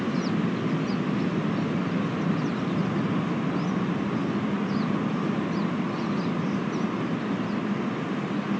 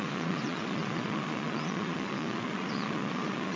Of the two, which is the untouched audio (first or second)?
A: first